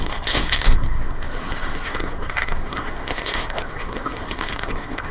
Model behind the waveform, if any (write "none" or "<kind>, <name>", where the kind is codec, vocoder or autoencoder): codec, SNAC